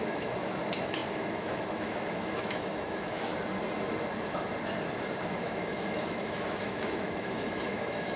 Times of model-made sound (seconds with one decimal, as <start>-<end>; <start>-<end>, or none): 0.0-3.3; 5.2-8.2